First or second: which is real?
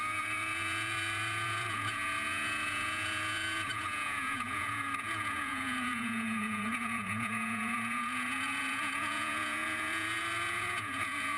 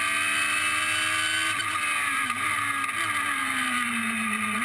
second